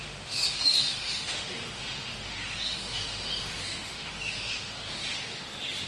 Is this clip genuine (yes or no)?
no